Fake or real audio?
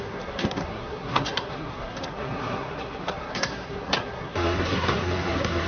fake